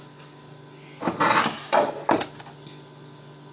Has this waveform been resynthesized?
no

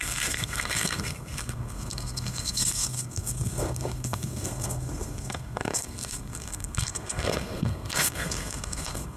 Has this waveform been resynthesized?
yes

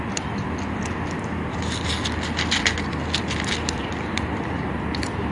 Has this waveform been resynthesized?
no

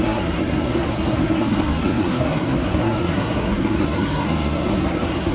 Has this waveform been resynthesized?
yes